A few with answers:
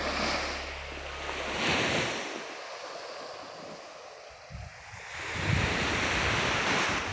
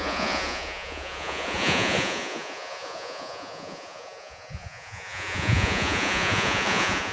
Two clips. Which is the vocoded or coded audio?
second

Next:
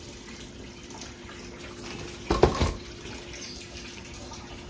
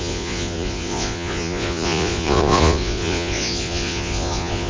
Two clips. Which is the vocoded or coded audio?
second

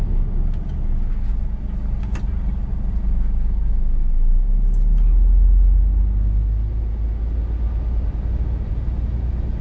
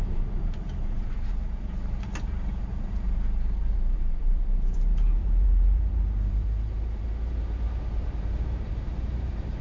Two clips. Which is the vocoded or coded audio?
second